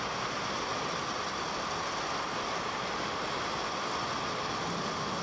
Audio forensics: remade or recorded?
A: recorded